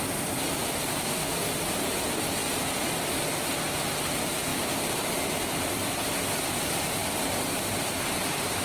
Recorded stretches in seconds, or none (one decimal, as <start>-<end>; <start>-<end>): 2.4-3.6; 4.5-5.0; 7.0-7.5